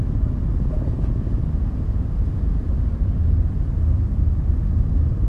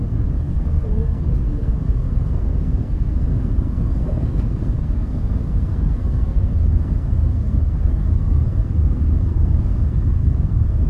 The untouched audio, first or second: first